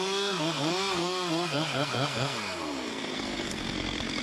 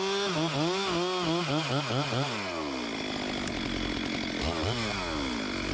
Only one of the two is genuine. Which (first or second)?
second